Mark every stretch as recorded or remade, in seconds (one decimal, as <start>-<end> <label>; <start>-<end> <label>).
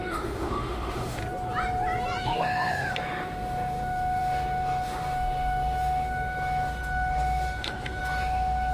0.0-1.2 remade; 1.2-2.2 recorded; 2.2-8.7 remade